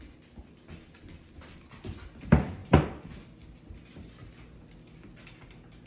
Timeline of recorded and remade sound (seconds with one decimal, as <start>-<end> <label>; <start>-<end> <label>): 0.0-5.9 recorded